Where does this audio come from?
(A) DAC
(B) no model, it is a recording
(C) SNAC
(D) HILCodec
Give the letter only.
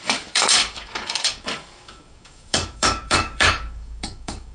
A